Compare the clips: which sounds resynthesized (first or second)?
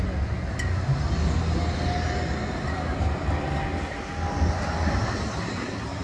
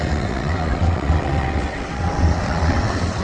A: second